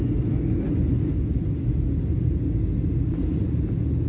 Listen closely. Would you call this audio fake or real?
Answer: real